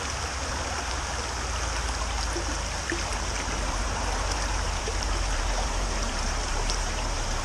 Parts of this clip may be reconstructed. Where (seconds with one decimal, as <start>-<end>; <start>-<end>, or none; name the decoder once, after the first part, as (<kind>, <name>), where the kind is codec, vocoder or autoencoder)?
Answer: 3.1-7.4 (vocoder, BigVGAN v2)